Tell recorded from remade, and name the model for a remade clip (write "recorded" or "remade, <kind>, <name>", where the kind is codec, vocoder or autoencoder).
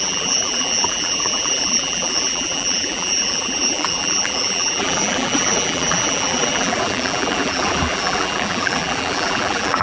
remade, vocoder, BigVGAN v2